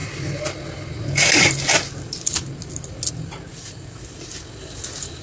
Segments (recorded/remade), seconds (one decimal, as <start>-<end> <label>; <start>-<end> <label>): 0.0-5.2 recorded